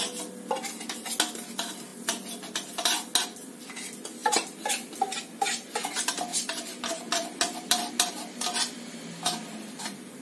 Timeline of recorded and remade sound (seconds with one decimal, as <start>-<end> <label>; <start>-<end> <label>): 0.0-6.3 recorded; 6.3-7.9 remade; 7.9-10.2 recorded